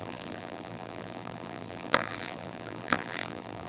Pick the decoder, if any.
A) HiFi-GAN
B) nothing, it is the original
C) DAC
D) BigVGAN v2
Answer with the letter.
D